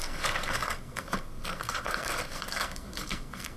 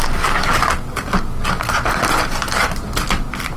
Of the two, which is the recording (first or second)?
second